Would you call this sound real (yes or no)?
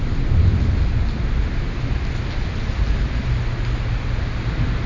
yes